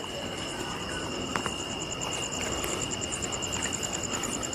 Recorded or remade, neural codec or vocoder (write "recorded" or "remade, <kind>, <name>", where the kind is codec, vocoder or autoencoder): recorded